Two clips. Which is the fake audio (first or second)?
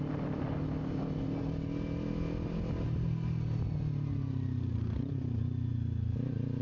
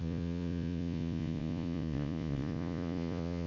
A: second